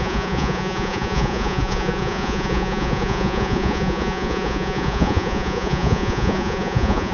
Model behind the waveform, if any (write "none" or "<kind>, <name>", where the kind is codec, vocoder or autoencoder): vocoder, Vocos